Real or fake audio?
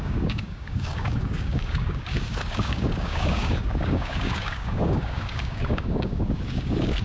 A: fake